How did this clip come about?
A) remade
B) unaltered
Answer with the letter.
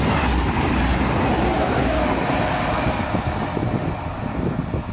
B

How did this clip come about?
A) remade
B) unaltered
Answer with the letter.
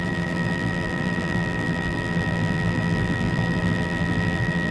A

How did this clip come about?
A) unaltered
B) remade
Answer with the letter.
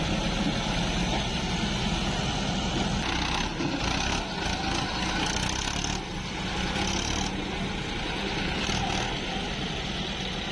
A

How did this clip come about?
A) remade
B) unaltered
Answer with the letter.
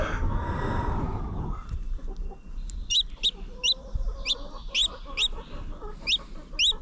B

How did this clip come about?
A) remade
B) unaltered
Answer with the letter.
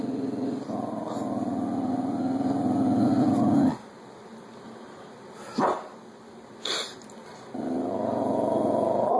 B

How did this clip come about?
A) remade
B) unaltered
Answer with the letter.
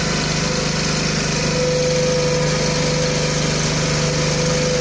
B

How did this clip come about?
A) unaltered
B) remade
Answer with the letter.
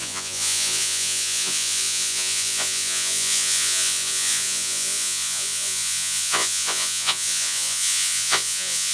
B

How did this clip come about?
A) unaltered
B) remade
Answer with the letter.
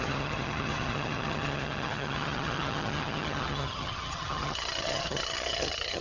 B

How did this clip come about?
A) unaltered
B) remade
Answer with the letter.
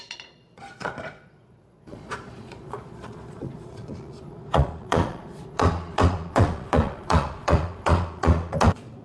B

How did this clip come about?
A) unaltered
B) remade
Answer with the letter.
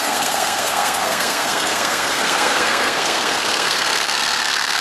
B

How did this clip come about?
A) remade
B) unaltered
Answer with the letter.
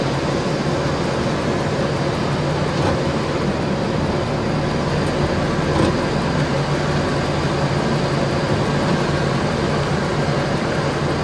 B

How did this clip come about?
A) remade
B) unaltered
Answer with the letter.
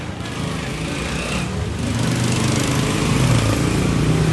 B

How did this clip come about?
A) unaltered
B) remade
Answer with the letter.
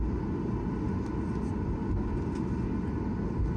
A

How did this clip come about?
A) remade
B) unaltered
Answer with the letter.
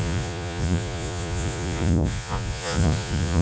A